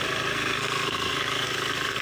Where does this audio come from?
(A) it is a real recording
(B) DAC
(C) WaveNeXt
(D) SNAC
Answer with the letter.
D